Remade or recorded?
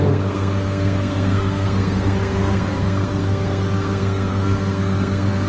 remade